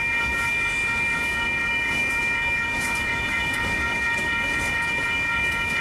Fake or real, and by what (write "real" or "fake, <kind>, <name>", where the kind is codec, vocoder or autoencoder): fake, codec, DAC